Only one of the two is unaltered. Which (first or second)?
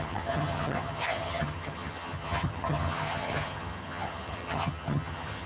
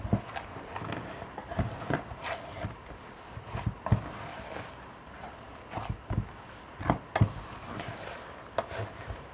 second